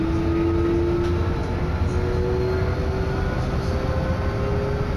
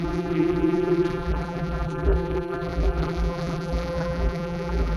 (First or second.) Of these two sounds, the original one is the first